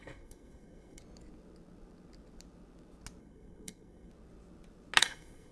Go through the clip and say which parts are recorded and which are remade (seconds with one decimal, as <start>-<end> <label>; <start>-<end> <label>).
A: 0.0-1.0 remade; 1.0-3.2 recorded; 3.2-4.1 remade; 4.1-5.0 recorded; 5.0-5.5 remade

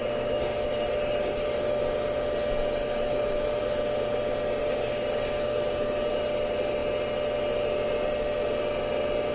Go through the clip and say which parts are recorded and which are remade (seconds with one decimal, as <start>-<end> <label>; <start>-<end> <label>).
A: 0.0-1.8 remade; 1.8-2.8 recorded; 2.8-3.6 remade; 3.6-4.6 recorded; 4.6-6.1 remade; 6.1-9.3 recorded

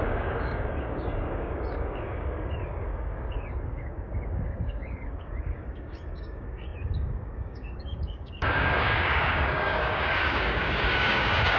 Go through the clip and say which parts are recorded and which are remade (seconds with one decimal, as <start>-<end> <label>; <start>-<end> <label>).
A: 0.0-11.6 remade

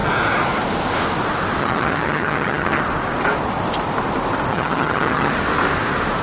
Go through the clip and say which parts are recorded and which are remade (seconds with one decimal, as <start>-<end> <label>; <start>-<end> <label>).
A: 0.0-1.6 recorded; 1.6-2.8 remade; 2.8-4.5 recorded; 4.5-5.3 remade; 5.3-6.2 recorded

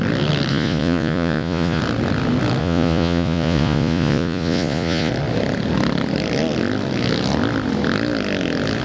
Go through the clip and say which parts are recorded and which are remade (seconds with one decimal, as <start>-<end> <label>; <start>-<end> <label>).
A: 0.0-0.5 recorded; 0.5-1.8 remade; 1.8-2.6 recorded; 2.6-5.1 remade; 5.1-8.8 recorded

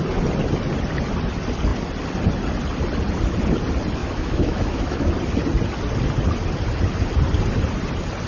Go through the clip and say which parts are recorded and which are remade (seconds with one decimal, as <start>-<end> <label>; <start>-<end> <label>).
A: 0.0-4.0 recorded; 4.0-5.1 remade; 5.1-8.3 recorded